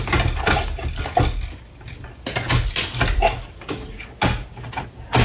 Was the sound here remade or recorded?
recorded